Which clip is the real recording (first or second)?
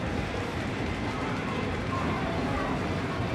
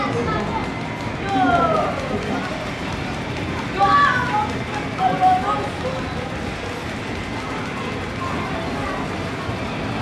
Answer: second